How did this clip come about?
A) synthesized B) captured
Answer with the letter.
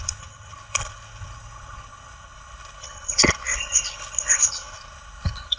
A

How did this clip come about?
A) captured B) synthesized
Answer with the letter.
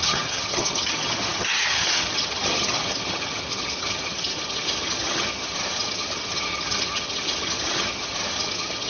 B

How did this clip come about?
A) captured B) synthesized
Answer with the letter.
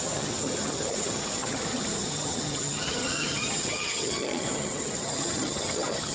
B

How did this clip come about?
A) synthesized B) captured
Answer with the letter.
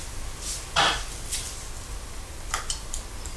B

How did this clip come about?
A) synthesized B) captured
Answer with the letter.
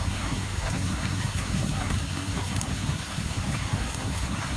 A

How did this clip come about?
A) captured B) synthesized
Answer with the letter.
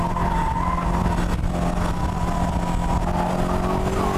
A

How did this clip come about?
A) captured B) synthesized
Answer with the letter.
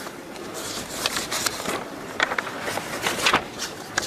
B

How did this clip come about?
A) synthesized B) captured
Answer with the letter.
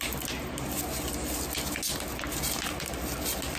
B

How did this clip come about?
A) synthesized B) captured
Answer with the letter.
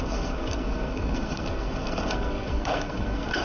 A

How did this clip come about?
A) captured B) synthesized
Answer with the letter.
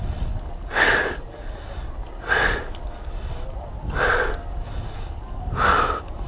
A